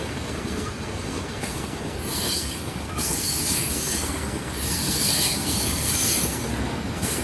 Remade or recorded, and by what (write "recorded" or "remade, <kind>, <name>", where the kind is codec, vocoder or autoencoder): remade, codec, SNAC